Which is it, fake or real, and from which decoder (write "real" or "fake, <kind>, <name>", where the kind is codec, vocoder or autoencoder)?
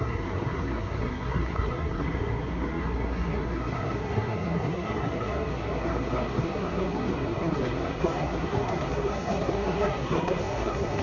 fake, codec, SNAC